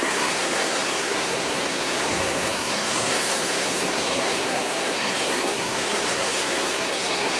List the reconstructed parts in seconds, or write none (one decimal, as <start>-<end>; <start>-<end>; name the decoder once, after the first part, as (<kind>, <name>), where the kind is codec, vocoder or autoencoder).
0.0-7.4 (codec, SNAC)